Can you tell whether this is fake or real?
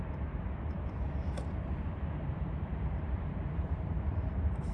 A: fake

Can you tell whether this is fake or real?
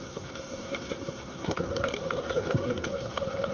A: fake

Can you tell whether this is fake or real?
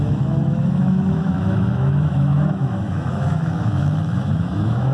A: fake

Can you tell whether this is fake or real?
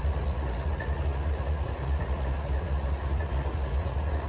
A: fake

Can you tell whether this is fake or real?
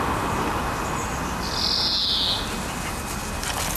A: real